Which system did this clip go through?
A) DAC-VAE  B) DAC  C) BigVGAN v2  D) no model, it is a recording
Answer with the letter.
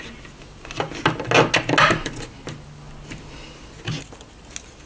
D